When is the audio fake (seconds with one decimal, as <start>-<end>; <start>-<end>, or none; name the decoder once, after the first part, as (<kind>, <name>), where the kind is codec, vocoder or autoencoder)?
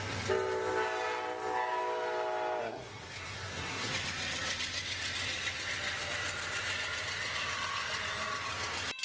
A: 2.6-3.9 (codec, SNAC)